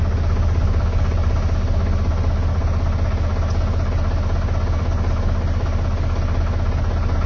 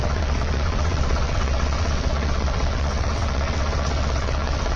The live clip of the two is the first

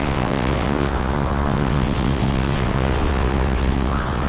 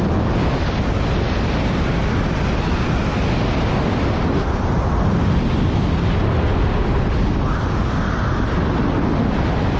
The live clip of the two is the second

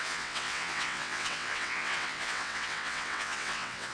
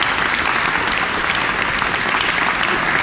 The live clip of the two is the second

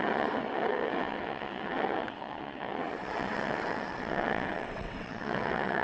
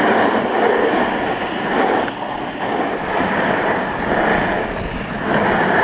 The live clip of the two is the second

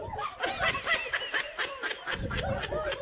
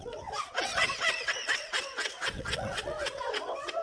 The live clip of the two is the first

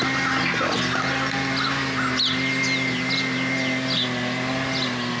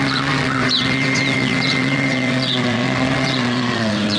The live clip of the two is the first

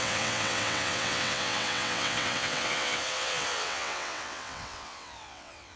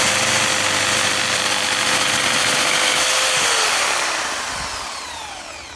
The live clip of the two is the second